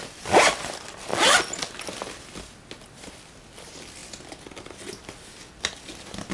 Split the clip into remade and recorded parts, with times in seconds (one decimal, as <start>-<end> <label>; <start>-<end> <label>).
0.0-6.3 recorded